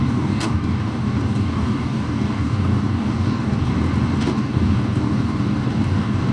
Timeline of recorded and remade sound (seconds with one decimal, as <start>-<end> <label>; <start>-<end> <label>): 0.0-3.7 remade; 3.7-4.2 recorded; 4.2-6.3 remade